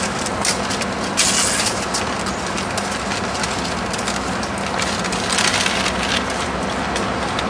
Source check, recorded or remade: recorded